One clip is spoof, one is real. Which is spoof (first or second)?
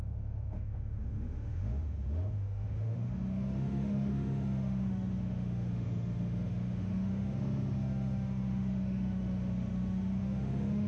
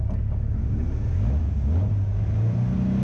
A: first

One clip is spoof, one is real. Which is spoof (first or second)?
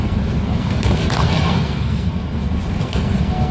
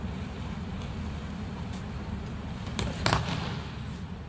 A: first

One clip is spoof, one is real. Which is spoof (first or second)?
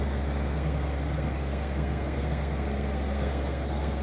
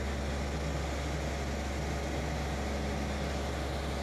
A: first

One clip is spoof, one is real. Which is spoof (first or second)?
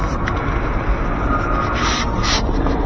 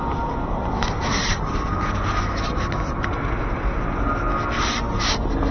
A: first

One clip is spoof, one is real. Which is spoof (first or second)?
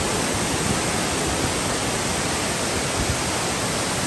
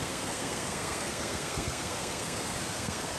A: second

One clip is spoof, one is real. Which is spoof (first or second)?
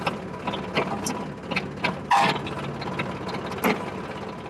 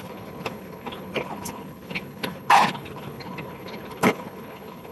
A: second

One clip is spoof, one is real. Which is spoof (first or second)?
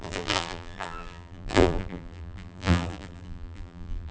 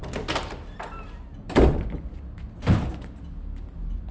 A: first